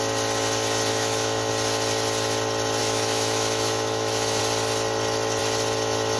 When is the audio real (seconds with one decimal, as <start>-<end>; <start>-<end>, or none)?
0.0-0.9; 1.5-2.8; 4.4-6.2